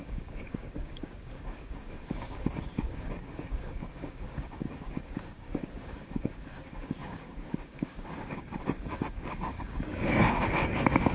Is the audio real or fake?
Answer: fake